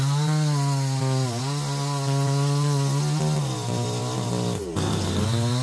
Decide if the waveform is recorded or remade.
recorded